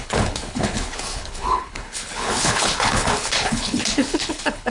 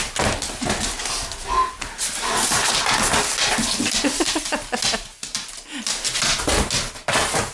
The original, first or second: second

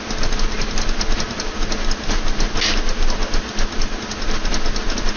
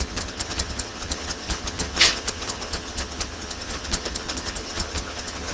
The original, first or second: first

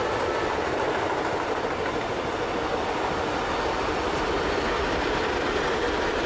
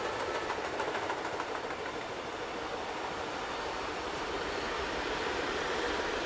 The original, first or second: first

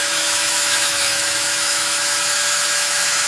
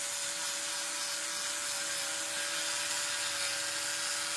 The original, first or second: second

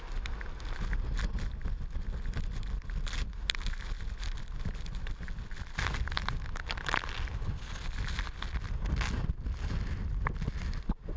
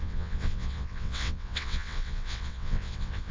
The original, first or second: first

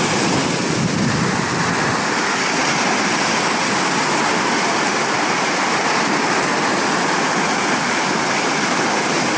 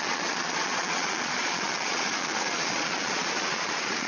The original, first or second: first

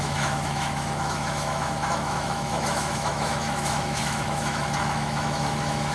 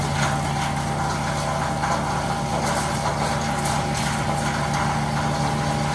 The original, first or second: second